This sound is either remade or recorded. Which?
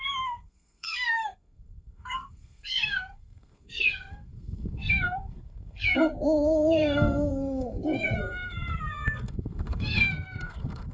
remade